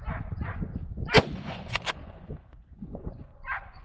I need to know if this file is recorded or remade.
remade